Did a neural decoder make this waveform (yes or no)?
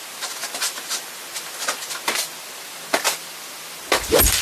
no